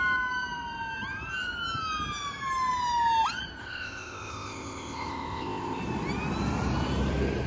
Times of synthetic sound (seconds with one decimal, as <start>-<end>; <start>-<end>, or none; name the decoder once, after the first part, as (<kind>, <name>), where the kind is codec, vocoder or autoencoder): 3.6-5.8 (codec, ZipCodec)